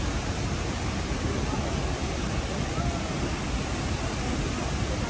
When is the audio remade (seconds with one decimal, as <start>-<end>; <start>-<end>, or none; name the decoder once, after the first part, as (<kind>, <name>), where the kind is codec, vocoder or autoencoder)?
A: none

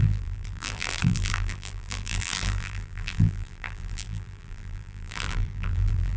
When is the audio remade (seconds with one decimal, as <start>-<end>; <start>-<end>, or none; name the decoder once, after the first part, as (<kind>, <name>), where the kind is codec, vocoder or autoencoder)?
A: 0.0-6.2 (vocoder, BigVGAN v2)

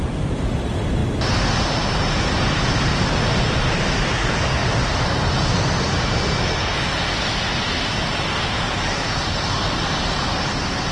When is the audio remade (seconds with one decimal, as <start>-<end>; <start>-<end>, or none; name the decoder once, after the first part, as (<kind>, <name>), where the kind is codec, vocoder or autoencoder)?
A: 0.0-1.0 (vocoder, BigVGAN v2); 2.3-4.6; 9.3-10.9

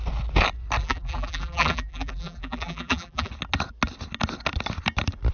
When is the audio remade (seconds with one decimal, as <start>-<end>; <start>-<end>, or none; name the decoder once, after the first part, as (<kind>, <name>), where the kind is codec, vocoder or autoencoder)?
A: 0.8-3.3 (vocoder, BigVGAN v2)

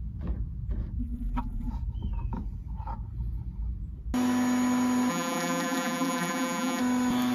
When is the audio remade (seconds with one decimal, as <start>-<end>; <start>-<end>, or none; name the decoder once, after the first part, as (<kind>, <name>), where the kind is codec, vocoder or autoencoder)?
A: 1.0-1.7 (vocoder, BigVGAN v2); 5.1-6.8